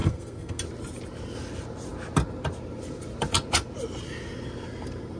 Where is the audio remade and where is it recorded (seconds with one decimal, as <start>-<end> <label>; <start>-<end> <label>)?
0.0-0.6 remade; 0.6-5.2 recorded